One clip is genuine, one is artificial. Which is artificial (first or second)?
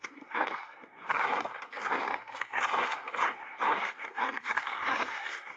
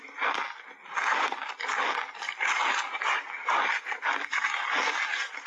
first